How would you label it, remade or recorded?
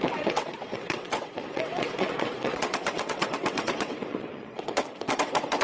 remade